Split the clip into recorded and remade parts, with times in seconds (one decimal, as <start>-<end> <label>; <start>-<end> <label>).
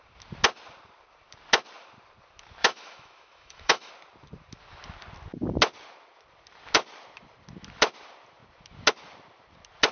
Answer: 0.0-2.6 recorded; 2.6-3.9 remade; 3.9-9.9 recorded